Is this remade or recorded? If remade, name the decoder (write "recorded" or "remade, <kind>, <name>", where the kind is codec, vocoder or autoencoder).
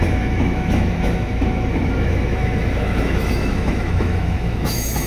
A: remade, autoencoder, DAC-VAE